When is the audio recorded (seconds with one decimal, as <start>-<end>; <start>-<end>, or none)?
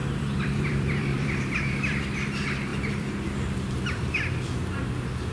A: 2.0-2.7; 4.4-5.3